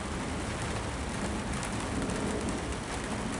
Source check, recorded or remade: recorded